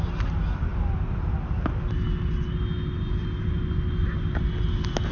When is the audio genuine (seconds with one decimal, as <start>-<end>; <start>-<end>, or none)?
0.0-5.1